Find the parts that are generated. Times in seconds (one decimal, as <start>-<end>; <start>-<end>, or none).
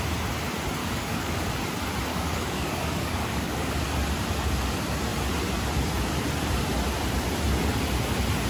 0.8-1.5; 2.1-3.8